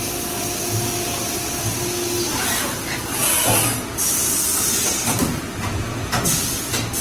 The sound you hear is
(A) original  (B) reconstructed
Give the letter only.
A